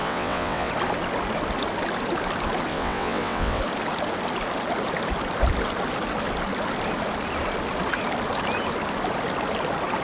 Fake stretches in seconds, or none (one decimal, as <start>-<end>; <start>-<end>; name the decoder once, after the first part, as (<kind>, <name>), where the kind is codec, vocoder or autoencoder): 0.0-0.7 (vocoder, WaveNeXt); 2.7-3.6